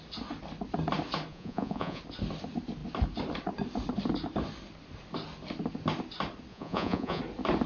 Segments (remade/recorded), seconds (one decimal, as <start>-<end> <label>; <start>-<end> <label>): 0.0-1.3 recorded; 1.3-2.0 remade; 2.0-6.5 recorded; 6.5-7.2 remade; 7.2-7.7 recorded